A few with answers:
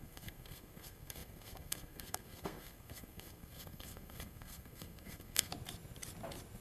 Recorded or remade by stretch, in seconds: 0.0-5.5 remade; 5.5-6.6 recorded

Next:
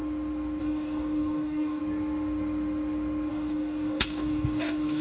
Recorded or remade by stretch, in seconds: 0.0-0.6 recorded; 0.6-1.8 remade; 1.8-3.3 recorded; 3.3-5.0 remade

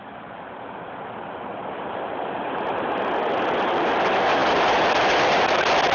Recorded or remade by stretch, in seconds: 0.0-5.9 recorded

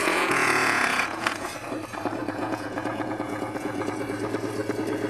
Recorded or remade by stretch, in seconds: 0.0-1.5 remade; 1.5-2.2 recorded; 2.2-3.9 remade; 3.9-5.1 recorded

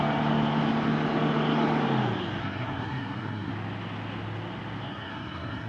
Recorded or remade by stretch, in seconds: 0.0-2.4 recorded; 2.4-3.5 remade; 3.5-4.9 recorded; 4.9-5.7 remade

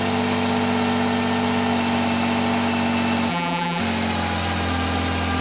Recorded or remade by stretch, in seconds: 0.0-3.3 recorded; 3.3-3.8 remade; 3.8-5.4 recorded

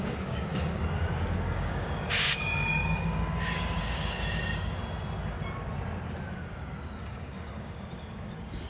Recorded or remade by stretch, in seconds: 0.0-4.8 remade; 4.8-6.3 recorded; 6.3-8.7 remade